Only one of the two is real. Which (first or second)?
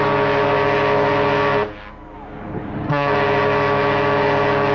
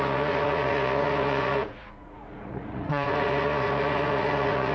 first